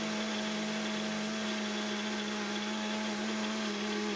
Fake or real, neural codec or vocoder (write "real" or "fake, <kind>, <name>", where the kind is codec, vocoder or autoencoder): real